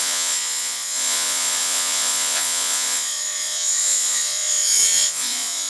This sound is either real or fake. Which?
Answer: fake